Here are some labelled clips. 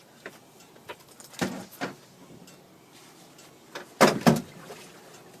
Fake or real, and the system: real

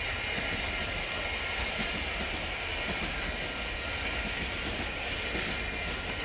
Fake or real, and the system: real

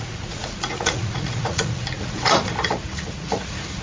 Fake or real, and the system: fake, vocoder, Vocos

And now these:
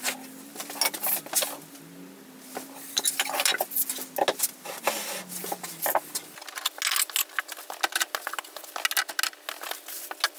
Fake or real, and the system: real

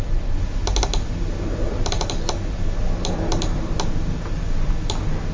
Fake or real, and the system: real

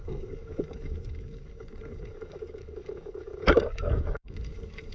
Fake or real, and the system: fake, codec, DAC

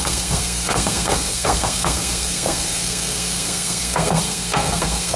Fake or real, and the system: fake, codec, SNAC